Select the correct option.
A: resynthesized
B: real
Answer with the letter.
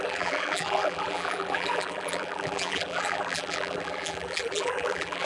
A